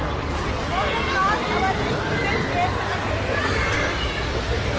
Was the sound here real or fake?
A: real